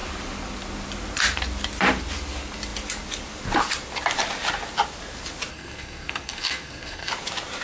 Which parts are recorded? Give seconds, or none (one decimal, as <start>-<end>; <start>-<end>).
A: 0.0-5.5; 7.1-7.6

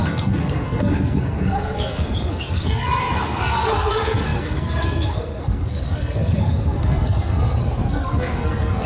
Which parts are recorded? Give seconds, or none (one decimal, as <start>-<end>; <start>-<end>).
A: none

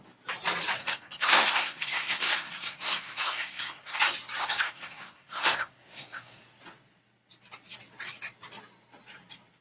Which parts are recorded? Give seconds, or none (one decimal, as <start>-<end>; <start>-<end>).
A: 0.0-0.8; 4.0-4.4; 6.4-9.6

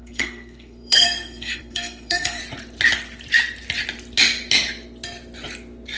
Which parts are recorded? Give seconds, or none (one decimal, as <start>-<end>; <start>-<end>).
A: 2.4-6.0

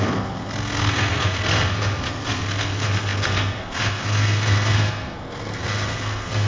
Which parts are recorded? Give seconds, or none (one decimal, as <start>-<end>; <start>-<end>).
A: none

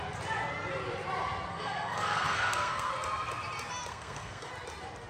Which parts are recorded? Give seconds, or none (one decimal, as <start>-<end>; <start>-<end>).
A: 0.0-1.5; 2.9-3.9; 4.5-5.1